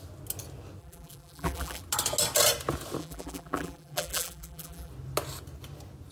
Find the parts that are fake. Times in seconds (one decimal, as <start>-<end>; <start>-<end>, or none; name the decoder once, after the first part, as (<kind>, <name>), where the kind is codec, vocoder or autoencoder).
0.8-1.8 (vocoder, BigVGAN v2); 3.0-4.9